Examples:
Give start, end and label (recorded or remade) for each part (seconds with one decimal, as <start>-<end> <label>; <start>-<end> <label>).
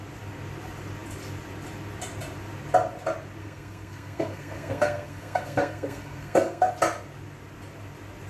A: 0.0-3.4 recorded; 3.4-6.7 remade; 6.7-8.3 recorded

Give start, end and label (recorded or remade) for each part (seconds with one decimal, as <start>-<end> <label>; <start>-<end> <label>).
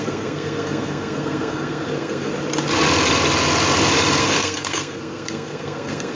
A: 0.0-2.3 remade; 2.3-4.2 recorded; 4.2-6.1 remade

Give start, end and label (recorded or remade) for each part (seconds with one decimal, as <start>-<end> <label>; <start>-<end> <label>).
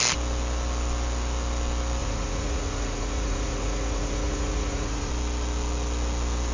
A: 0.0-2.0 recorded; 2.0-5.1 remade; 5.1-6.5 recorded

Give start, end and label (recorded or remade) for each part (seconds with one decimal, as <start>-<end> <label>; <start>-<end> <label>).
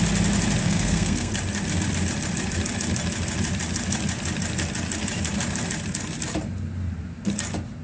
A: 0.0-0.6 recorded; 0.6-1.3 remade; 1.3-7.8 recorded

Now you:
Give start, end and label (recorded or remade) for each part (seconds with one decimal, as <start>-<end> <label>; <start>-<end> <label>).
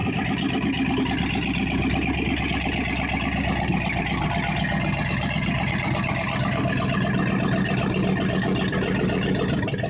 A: 0.0-9.9 recorded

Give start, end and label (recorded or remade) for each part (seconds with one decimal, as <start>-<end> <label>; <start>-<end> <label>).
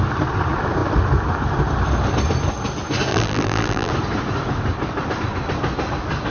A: 0.0-3.1 recorded; 3.1-3.9 remade; 3.9-6.3 recorded